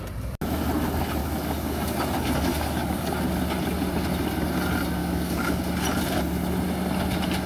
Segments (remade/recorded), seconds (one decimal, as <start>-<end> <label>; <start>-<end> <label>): 0.0-1.2 recorded; 1.2-3.2 remade; 3.2-5.0 recorded; 5.0-5.6 remade; 5.6-7.5 recorded